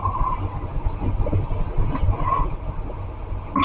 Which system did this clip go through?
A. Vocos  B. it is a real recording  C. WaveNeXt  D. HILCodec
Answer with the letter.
B